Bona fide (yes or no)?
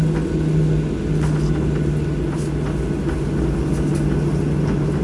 yes